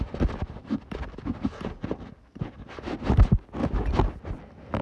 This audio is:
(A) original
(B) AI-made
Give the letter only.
A